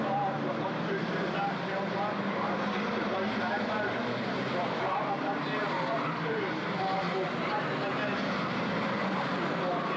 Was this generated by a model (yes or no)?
no